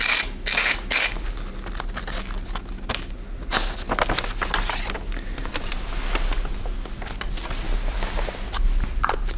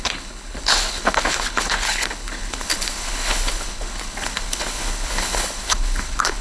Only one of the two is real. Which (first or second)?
first